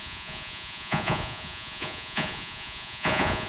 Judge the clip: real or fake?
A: fake